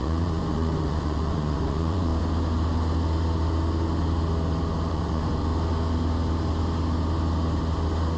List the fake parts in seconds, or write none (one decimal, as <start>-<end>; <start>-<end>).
0.0-2.1; 4.9-5.5